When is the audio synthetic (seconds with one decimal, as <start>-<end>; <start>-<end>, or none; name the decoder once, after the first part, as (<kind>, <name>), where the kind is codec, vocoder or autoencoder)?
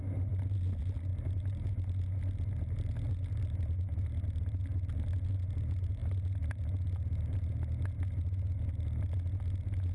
none